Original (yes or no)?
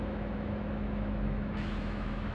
no